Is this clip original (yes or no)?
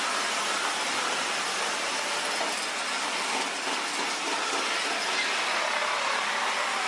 yes